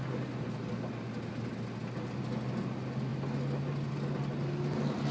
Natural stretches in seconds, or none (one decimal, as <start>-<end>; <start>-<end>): 0.0-5.1